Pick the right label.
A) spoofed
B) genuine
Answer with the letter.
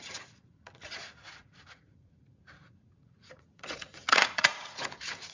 A